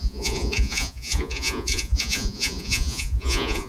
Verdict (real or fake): fake